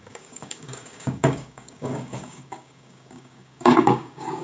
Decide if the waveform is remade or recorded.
remade